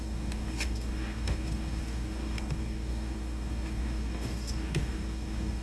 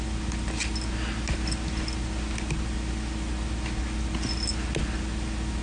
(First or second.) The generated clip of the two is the first